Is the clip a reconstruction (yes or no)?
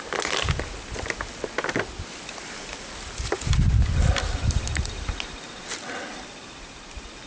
no